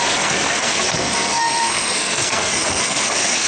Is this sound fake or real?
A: fake